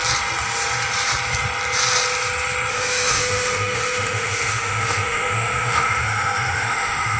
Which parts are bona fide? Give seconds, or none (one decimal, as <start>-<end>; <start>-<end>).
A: 0.0-2.7